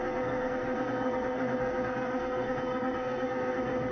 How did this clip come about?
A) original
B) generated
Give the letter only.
B